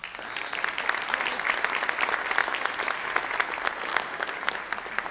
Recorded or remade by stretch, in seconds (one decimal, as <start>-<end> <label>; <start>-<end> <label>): 0.0-3.9 recorded; 3.9-4.5 remade; 4.5-5.1 recorded